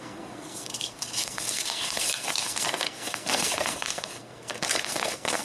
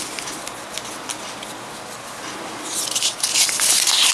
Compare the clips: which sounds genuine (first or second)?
second